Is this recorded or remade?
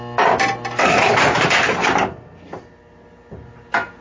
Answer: recorded